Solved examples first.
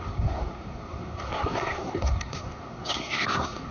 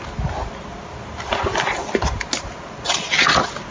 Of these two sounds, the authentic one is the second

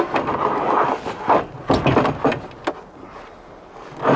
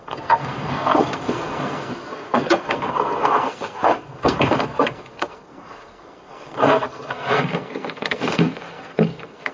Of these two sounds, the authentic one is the first